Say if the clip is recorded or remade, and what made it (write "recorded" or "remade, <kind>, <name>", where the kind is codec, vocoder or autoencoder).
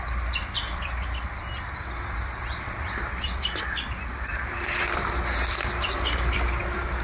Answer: remade, vocoder, BigVGAN v2